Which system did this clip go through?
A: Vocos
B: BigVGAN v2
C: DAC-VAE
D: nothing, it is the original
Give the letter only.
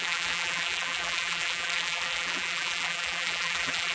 B